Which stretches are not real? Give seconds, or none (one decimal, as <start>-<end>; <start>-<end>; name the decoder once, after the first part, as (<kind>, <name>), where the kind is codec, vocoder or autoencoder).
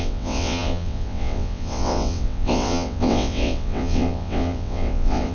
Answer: 0.0-5.3 (vocoder, WaveNeXt)